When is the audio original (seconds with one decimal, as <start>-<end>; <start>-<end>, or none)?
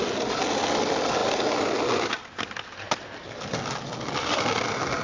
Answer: 0.0-5.0